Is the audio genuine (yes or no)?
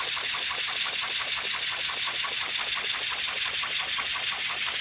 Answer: yes